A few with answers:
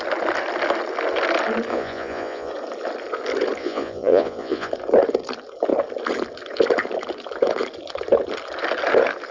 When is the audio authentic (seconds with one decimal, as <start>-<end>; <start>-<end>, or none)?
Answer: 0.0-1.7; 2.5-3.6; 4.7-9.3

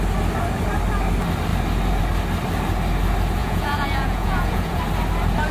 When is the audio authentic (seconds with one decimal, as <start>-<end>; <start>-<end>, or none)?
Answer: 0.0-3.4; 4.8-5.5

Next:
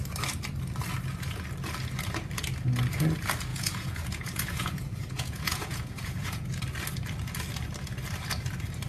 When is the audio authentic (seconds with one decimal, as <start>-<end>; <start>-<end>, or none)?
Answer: 0.0-3.5; 6.6-8.9

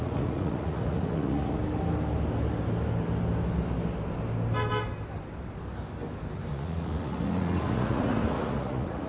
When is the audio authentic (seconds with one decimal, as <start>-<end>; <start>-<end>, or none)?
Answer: 1.6-6.5

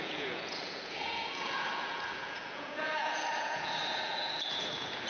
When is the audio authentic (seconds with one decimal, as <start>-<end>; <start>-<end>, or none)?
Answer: none

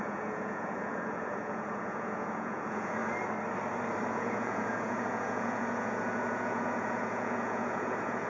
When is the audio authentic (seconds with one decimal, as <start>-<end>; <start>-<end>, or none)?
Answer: 3.0-4.1

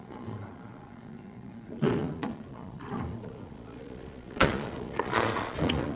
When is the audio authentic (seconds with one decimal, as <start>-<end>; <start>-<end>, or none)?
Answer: none